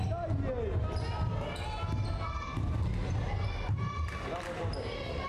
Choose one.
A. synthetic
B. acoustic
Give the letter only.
B